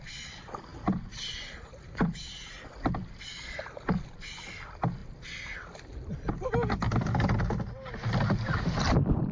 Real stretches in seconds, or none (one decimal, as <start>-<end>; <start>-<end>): 0.0-9.3